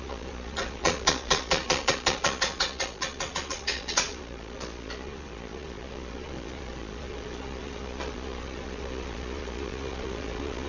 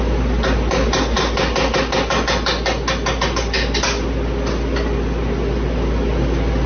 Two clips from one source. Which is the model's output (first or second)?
first